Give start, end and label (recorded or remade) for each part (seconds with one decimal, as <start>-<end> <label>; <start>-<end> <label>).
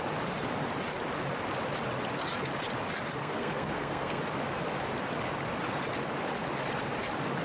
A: 0.0-3.2 recorded; 3.2-4.2 remade; 4.2-7.4 recorded